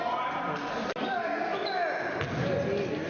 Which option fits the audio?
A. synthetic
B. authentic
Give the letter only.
B